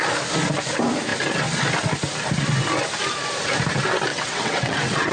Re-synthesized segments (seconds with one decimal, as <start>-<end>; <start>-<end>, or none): 4.1-5.1